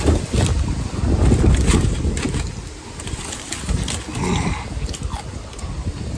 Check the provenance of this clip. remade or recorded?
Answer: recorded